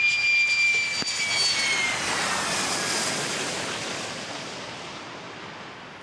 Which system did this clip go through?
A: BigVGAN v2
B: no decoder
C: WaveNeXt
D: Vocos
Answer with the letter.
B